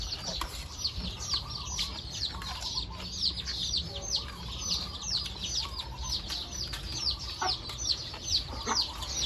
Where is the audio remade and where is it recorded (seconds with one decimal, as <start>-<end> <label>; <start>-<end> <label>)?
0.0-9.3 recorded